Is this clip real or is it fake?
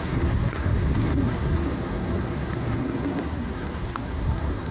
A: fake